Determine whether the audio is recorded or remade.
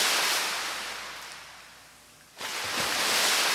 recorded